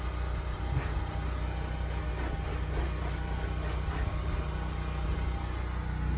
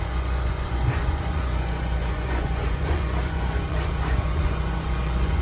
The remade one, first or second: second